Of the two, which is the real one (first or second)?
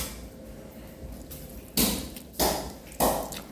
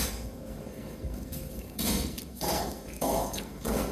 first